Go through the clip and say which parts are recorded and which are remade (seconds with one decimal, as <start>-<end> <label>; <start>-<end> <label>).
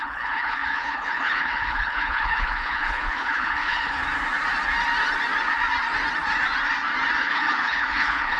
0.0-4.0 remade; 4.0-7.2 recorded; 7.2-8.4 remade